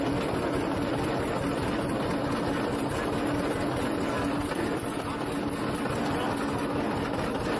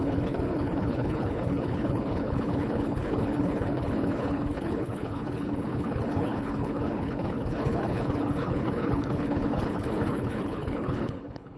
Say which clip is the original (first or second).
first